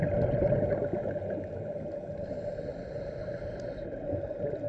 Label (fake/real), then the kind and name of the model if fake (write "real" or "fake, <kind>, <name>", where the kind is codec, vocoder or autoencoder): real